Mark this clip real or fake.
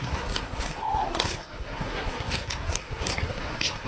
fake